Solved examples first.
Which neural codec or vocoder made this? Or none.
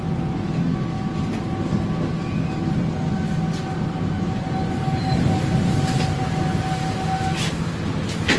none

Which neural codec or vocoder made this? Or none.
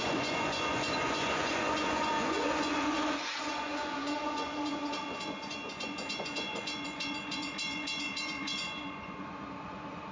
vocoder, Vocos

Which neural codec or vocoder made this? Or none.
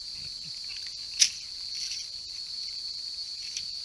none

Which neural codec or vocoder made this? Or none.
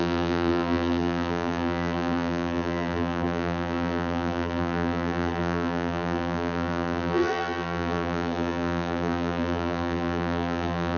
vocoder, BigVGAN v2